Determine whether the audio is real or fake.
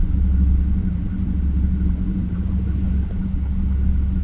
real